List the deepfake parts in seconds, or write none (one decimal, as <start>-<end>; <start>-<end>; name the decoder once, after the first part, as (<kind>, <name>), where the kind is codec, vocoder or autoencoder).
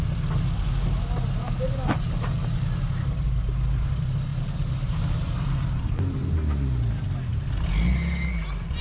4.3-5.9 (vocoder, BigVGAN v2)